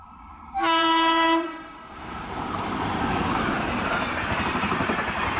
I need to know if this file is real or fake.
fake